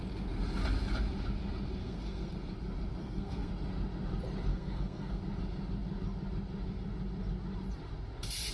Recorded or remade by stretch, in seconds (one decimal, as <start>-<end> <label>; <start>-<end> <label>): 0.0-1.8 recorded; 1.8-2.3 remade; 2.3-3.0 recorded; 3.0-3.5 remade; 3.5-4.5 recorded; 4.5-5.2 remade; 5.2-8.5 recorded